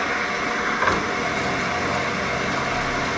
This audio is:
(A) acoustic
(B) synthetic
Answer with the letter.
A